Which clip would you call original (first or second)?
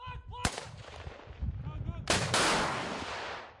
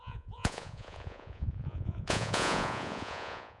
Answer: first